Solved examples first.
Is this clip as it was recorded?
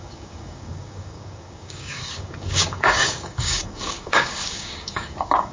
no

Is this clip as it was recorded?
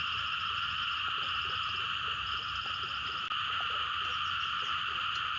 yes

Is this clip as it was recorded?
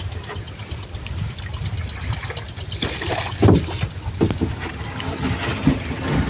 yes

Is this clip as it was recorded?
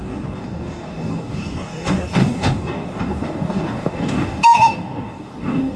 no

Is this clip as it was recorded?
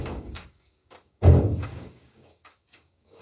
no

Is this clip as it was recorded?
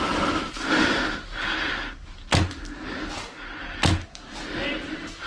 yes